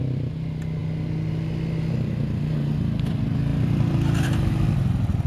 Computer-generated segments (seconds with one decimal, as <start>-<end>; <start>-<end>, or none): none